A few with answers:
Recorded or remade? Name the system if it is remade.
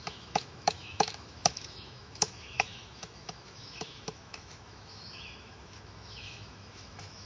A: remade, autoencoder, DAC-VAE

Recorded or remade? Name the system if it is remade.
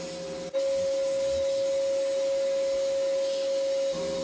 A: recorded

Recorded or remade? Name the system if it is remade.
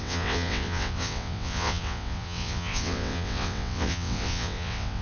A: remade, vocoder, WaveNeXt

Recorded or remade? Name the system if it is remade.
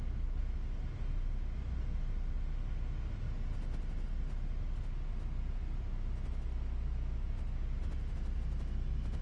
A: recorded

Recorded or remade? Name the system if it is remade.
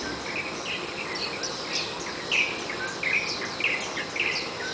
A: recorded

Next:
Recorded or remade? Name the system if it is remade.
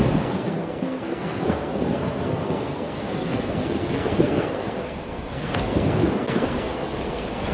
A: remade, codec, SNAC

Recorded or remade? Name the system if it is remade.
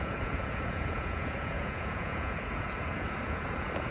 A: remade, vocoder, Vocos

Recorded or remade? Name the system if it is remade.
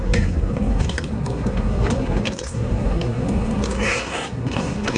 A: remade, codec, SNAC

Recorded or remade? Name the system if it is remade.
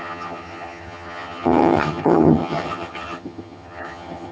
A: remade, vocoder, HiFi-GAN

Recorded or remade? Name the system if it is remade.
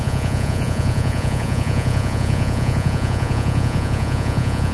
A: remade, vocoder, Vocos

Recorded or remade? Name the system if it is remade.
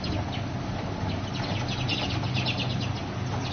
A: recorded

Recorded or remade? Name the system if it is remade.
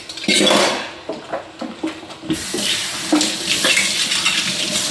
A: recorded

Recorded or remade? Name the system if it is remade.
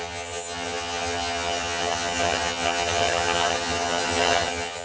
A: remade, vocoder, HiFi-GAN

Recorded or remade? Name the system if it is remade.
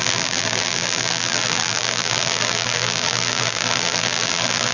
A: remade, vocoder, BigVGAN v2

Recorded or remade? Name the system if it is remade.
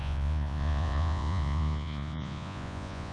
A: remade, vocoder, Vocos